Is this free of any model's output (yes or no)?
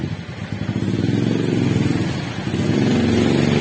yes